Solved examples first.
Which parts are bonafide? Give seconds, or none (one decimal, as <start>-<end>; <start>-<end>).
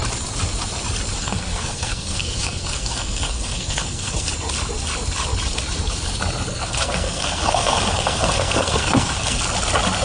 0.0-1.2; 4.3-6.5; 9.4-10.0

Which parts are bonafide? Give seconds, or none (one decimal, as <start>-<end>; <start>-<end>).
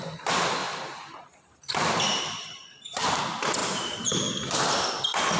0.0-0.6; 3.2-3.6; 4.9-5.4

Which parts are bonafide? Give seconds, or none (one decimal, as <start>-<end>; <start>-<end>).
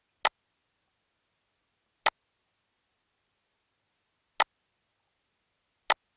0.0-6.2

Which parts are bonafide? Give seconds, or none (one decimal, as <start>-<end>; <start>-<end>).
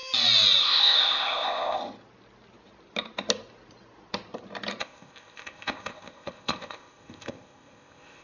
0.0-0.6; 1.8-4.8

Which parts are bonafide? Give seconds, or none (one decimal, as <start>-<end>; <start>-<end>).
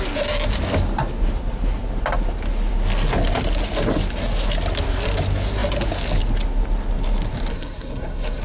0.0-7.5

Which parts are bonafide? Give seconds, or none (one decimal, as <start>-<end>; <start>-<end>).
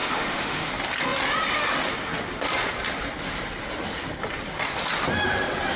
0.7-5.8